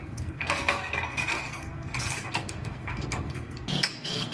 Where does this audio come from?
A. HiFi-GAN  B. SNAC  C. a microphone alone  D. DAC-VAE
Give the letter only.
B